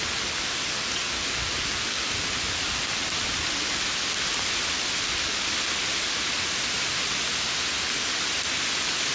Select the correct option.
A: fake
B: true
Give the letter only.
B